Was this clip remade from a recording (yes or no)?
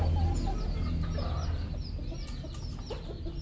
no